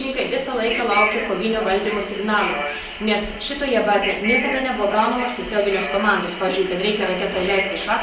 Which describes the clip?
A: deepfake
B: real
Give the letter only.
B